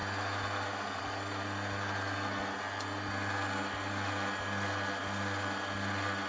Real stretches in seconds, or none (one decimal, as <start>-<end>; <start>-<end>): 0.0-6.3